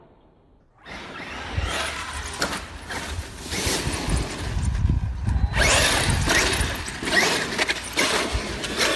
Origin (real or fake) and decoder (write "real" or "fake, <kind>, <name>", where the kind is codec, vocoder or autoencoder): real